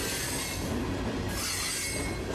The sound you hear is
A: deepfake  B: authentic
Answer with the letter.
B